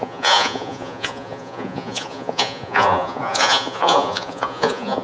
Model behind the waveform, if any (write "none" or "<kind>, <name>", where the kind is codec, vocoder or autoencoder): vocoder, Vocos